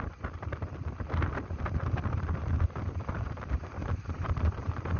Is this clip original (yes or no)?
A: yes